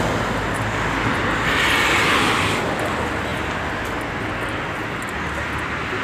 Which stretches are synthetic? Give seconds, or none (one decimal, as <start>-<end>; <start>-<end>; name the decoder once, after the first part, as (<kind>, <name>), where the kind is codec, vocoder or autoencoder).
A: none